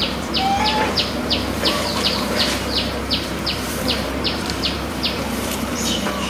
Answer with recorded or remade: remade